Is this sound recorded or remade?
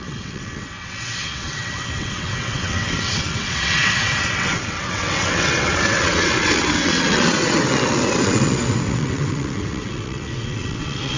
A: remade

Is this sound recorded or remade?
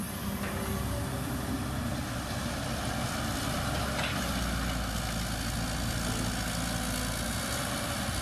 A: recorded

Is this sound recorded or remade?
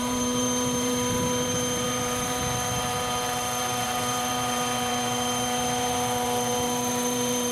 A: remade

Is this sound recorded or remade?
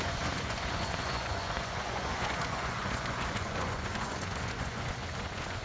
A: remade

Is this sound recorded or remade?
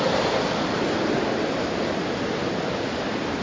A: recorded